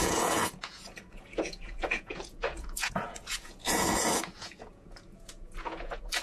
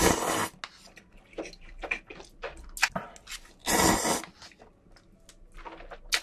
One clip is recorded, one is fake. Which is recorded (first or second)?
second